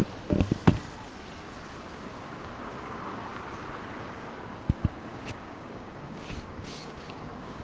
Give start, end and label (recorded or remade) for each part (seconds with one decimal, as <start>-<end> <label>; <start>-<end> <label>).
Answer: 0.0-1.7 recorded; 1.7-3.3 remade; 3.3-4.0 recorded; 4.0-7.6 remade